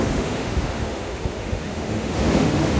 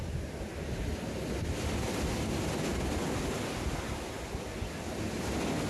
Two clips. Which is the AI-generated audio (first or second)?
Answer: first